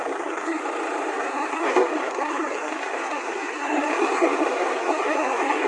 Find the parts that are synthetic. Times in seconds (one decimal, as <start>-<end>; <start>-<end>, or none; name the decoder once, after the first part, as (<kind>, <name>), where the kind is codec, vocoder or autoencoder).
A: 0.0-0.6 (codec, SNAC); 1.1-5.7

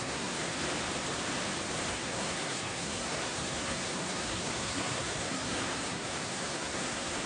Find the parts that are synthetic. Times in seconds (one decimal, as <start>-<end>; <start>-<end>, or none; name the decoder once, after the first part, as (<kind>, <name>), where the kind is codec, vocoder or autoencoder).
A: 0.0-0.5 (codec, SNAC); 1.9-7.3